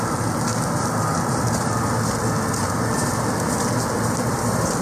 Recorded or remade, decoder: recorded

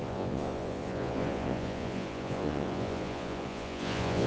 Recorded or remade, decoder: remade, vocoder, Vocos